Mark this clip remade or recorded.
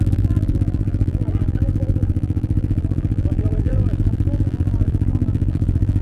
remade